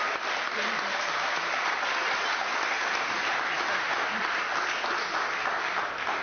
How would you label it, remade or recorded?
recorded